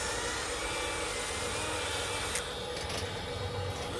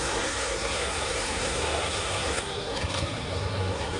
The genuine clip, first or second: first